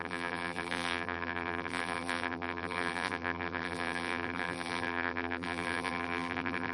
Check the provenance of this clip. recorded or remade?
remade